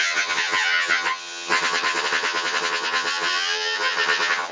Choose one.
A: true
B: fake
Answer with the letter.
B